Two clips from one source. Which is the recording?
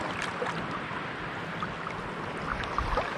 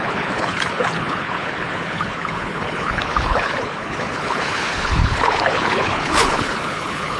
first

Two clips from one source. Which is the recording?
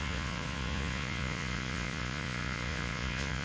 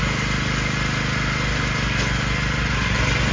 second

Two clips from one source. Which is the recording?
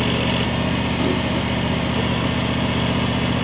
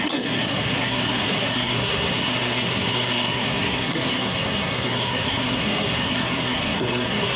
first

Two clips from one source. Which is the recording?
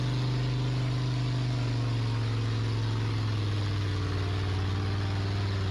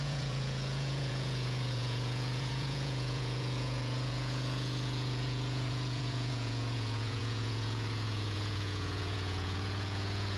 first